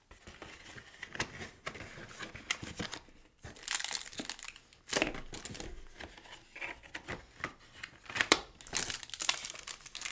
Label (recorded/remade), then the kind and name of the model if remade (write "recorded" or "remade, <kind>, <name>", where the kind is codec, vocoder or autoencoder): recorded